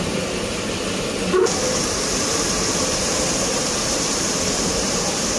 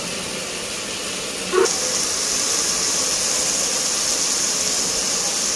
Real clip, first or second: second